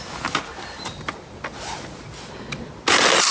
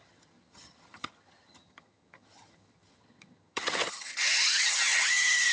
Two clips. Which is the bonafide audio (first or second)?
first